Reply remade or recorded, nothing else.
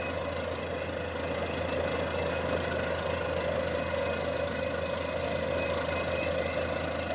recorded